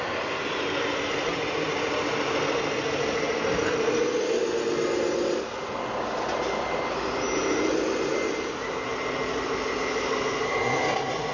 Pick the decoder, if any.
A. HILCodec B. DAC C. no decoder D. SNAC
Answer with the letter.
C